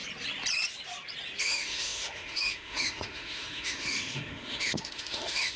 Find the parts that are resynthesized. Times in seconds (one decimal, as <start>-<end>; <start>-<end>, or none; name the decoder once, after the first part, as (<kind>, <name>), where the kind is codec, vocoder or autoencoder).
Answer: 1.4-5.6 (autoencoder, DAC-VAE)